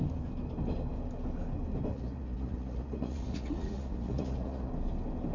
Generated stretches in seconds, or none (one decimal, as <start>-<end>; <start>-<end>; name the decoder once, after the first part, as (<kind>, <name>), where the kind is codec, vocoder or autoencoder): 1.9-4.7 (vocoder, Vocos)